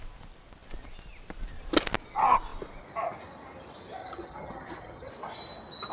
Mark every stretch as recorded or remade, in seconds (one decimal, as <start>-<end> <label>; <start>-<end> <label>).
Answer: 0.0-4.0 recorded; 4.0-5.1 remade; 5.1-5.9 recorded